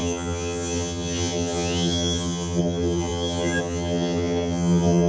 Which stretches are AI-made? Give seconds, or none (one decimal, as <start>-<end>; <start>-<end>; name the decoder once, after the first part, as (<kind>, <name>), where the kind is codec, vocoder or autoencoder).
0.0-5.1 (vocoder, HiFi-GAN)